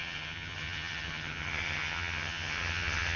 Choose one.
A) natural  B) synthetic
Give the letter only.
B